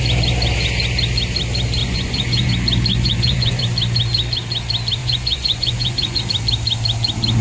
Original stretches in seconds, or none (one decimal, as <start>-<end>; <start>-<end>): 0.0-1.8; 2.5-2.9; 3.6-5.0; 6.2-7.4